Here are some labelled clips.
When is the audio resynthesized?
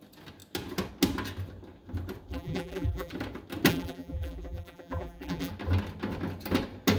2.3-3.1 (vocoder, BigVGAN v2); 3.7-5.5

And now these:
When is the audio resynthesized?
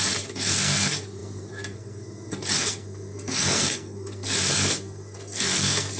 0.0-6.0 (codec, SNAC)